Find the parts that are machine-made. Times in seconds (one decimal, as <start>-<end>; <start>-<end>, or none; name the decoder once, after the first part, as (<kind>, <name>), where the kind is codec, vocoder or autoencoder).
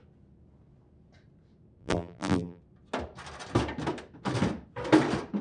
1.8-2.6 (vocoder, BigVGAN v2)